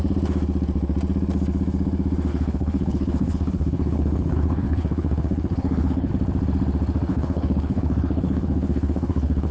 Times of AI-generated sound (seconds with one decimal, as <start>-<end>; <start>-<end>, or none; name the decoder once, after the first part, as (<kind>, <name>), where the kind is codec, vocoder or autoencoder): 2.3-6.1 (codec, HILCodec); 7.1-9.5